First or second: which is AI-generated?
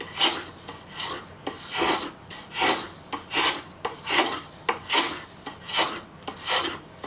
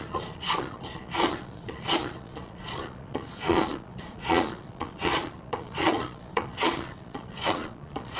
second